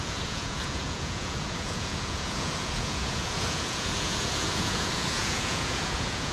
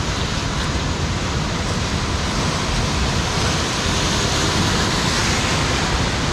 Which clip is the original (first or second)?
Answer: second